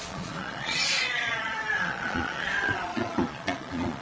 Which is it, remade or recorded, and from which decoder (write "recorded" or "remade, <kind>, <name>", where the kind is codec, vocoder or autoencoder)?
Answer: remade, vocoder, Vocos